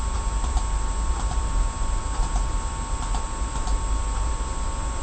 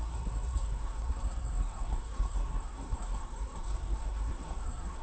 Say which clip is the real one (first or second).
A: first